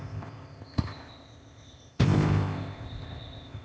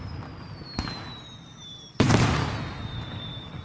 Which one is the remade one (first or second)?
first